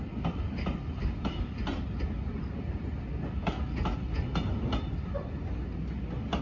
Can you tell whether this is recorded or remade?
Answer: recorded